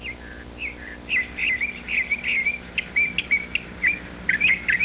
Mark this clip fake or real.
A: real